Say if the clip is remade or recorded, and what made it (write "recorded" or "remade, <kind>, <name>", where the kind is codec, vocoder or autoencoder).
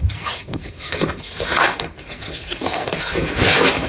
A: remade, codec, SNAC